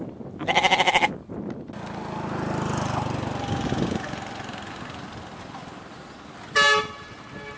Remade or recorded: recorded